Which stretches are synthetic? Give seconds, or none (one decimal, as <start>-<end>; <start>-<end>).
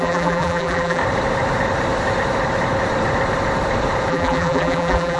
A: 0.0-1.0; 4.1-5.2